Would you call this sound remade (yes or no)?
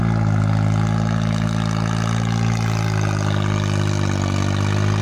no